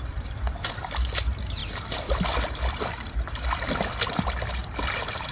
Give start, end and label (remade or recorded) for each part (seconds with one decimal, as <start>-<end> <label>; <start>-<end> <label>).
0.0-4.6 remade; 4.6-5.3 recorded